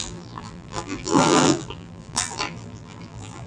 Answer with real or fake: fake